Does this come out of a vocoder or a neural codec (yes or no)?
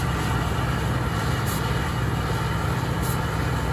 no